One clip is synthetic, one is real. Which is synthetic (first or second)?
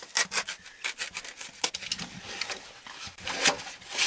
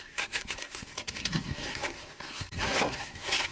second